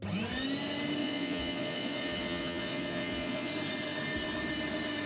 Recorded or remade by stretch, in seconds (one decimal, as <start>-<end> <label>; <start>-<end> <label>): 0.0-1.0 recorded; 1.0-3.5 remade; 3.5-5.1 recorded